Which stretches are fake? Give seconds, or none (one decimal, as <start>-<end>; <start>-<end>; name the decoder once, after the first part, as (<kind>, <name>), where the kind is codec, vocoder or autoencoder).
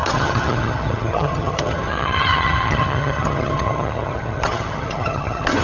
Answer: 0.0-5.6 (vocoder, HiFi-GAN)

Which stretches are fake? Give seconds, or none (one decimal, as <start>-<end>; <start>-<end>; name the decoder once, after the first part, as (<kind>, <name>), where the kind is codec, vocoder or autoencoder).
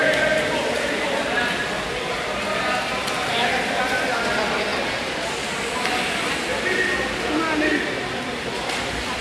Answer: none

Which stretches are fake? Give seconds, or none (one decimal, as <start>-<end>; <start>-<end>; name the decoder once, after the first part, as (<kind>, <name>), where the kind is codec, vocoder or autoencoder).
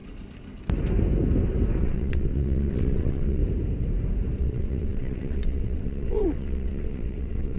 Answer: 1.8-3.4 (vocoder, WaveNeXt); 4.4-7.6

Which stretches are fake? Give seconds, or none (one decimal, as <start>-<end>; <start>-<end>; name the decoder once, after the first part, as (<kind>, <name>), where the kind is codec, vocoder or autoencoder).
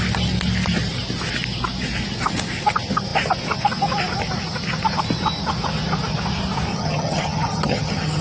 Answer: 6.7-8.2 (vocoder, HiFi-GAN)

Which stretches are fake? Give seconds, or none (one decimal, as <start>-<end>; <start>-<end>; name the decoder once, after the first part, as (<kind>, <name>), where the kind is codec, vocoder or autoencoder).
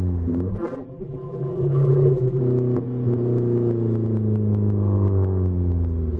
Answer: 0.5-2.4 (vocoder, BigVGAN v2)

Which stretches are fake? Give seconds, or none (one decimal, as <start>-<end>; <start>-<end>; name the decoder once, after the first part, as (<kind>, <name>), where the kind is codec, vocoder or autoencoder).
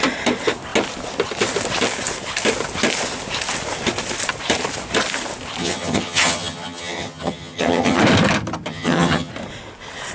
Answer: 5.6-8.0 (vocoder, HiFi-GAN); 8.7-9.3